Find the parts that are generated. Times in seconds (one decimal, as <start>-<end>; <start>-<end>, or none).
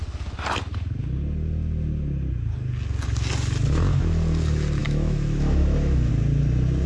4.8-6.1